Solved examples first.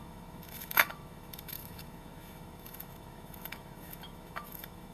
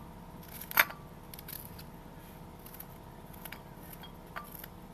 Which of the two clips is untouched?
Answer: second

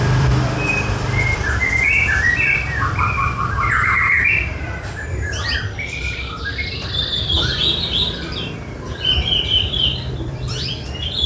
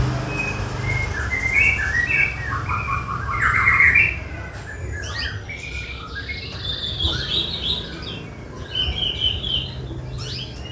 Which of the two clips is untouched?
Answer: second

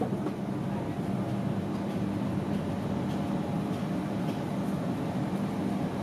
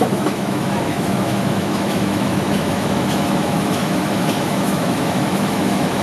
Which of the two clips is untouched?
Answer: first